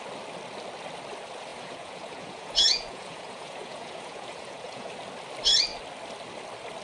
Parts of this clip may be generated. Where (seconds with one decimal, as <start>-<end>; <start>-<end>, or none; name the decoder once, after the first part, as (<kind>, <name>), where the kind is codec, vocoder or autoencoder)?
1.5-4.9 (vocoder, Vocos)